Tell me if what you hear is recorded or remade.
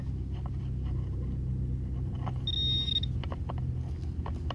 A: recorded